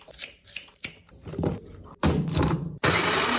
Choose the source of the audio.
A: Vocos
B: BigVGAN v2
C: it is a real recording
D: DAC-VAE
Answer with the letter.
B